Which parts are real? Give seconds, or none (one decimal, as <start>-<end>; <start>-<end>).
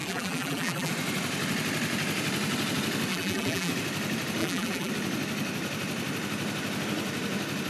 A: 0.9-3.1; 3.7-4.4; 4.9-7.7